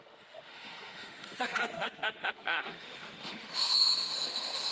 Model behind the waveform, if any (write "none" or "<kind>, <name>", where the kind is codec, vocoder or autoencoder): autoencoder, DAC-VAE